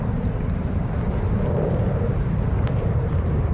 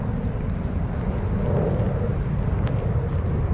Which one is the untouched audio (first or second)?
second